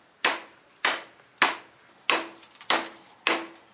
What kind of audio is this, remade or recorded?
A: recorded